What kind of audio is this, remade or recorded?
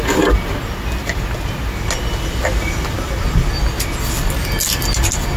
recorded